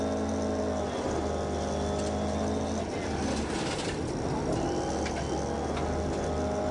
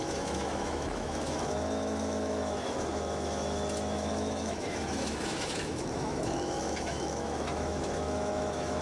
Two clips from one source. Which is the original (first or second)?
first